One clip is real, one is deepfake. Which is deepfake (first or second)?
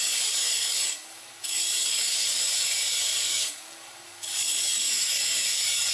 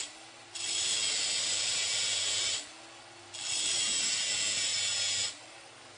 first